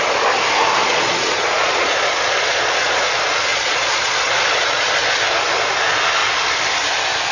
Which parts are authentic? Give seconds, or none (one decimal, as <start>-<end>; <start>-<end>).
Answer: 0.0-0.8; 3.1-3.5; 4.9-7.3